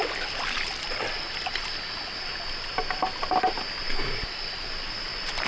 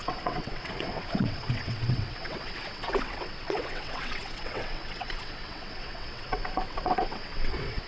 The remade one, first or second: second